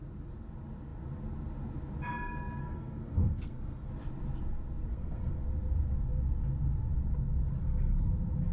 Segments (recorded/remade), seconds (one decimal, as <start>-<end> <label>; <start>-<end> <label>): 0.0-2.6 recorded; 2.6-3.9 remade; 3.9-4.9 recorded; 4.9-5.4 remade; 5.4-7.6 recorded; 7.6-8.1 remade; 8.1-8.5 recorded

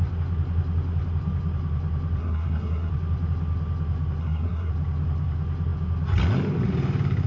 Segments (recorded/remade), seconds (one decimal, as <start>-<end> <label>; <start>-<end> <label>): 0.0-2.2 recorded; 2.2-2.9 remade; 2.9-4.2 recorded; 4.2-4.7 remade; 4.7-7.3 recorded

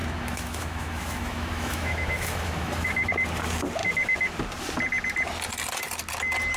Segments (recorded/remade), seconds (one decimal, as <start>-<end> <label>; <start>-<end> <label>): 0.0-3.1 remade; 3.1-6.6 recorded

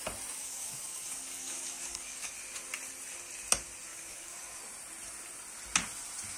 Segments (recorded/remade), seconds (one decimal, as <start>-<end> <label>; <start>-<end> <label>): 0.0-0.4 recorded; 0.4-2.3 remade; 2.3-3.9 recorded; 3.9-4.6 remade; 4.6-6.4 recorded

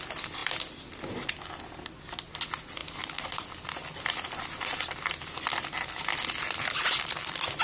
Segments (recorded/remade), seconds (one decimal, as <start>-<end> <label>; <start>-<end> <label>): 0.0-7.6 recorded

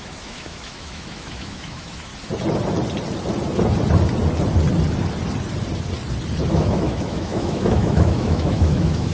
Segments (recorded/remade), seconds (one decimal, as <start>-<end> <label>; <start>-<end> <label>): 0.0-2.1 remade; 2.1-6.5 recorded; 6.5-9.1 remade